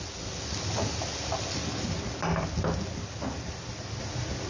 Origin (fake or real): real